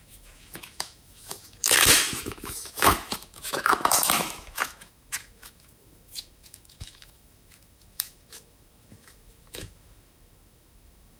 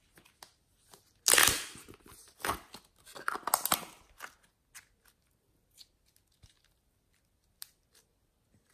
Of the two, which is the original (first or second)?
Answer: second